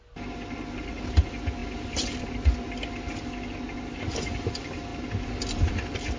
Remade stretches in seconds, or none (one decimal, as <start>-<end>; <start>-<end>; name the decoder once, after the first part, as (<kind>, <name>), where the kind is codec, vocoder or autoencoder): none